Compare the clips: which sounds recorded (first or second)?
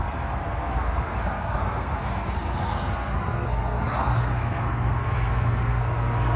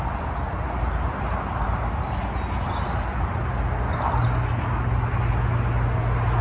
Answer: second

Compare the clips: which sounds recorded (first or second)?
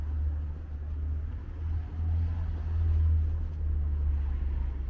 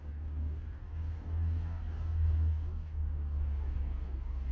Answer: first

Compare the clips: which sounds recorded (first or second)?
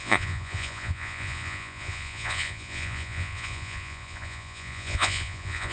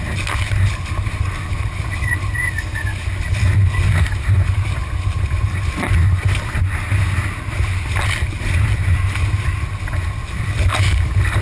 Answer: second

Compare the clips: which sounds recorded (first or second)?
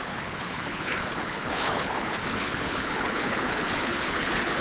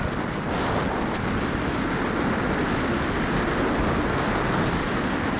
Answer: second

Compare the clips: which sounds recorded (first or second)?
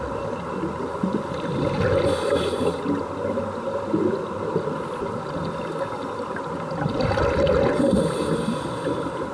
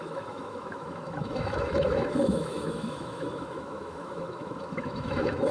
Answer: first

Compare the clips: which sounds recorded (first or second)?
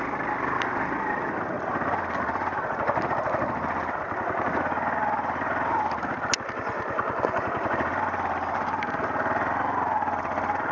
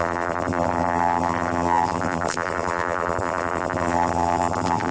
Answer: first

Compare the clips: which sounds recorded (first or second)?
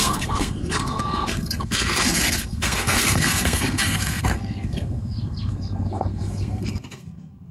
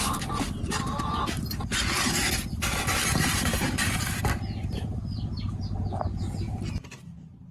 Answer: second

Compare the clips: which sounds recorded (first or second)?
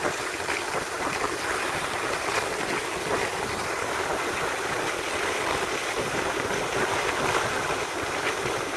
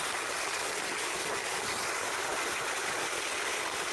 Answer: second